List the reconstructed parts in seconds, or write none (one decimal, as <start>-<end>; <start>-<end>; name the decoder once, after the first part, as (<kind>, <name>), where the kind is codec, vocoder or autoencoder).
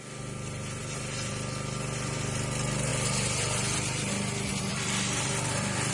0.8-1.3 (vocoder, BigVGAN v2); 2.9-4.1; 4.7-5.9